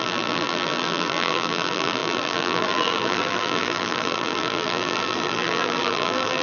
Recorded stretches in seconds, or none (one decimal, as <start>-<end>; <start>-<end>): none